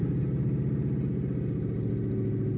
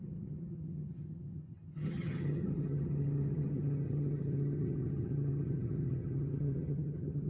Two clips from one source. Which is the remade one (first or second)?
second